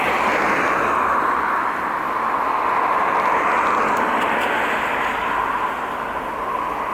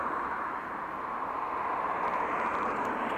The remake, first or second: second